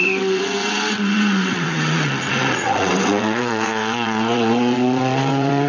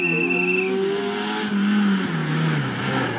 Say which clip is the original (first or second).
second